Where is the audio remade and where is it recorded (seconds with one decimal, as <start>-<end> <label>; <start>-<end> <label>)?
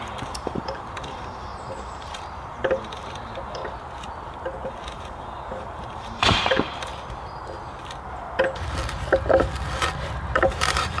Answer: 0.0-3.6 remade; 3.6-4.7 recorded; 4.7-6.9 remade; 6.9-10.4 recorded; 10.4-11.0 remade